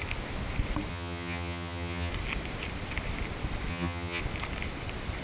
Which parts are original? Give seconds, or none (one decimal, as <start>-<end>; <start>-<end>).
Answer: 0.0-0.9; 2.1-3.7; 4.2-5.2